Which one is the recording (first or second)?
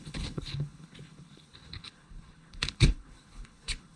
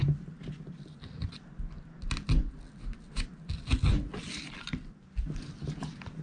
second